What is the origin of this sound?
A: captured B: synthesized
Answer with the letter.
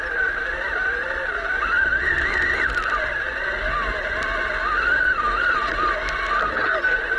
A